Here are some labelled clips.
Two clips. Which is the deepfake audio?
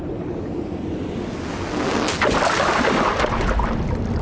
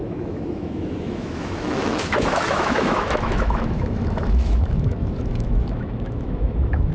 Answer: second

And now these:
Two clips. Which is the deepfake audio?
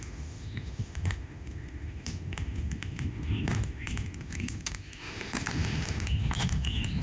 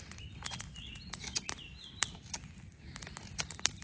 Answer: first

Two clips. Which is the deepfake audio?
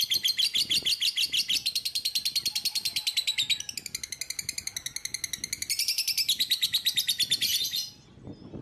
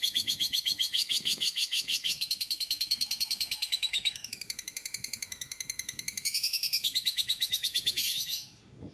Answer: second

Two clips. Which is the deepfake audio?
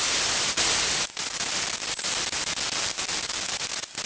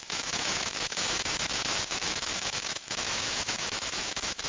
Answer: second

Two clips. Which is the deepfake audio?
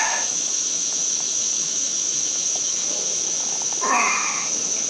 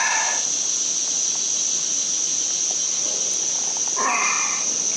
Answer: first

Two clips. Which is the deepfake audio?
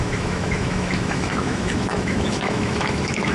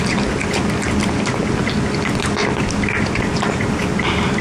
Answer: first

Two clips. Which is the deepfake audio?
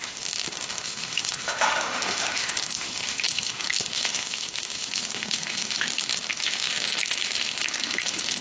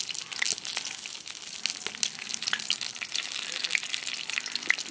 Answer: first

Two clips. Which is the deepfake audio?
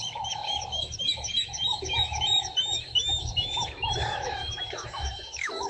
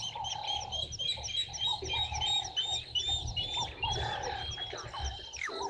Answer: first